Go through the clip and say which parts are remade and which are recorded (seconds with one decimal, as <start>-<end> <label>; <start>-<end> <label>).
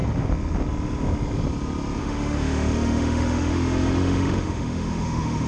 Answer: 0.0-2.0 recorded; 2.0-5.5 remade